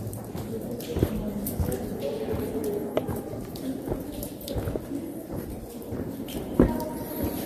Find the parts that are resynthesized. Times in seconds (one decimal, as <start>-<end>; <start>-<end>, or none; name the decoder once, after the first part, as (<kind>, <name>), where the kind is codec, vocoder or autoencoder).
5.3-7.5 (vocoder, BigVGAN v2)